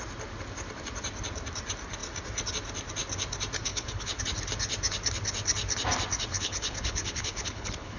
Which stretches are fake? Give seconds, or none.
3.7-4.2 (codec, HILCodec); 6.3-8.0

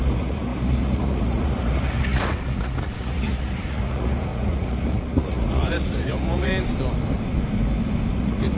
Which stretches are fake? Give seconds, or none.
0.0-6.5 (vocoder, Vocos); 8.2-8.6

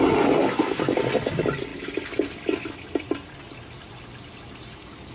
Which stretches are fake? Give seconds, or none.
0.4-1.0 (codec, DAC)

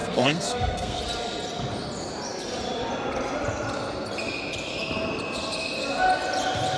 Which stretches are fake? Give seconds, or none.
0.0-1.0 (codec, SNAC)

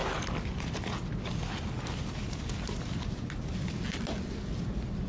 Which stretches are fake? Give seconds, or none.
none

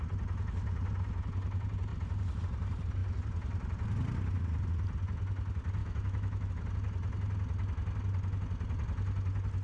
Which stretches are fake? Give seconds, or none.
5.8-6.5 (autoencoder, DAC-VAE)